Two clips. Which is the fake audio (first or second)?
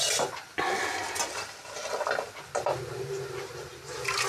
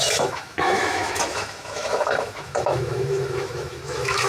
second